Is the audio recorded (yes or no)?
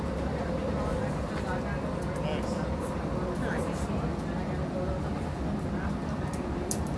yes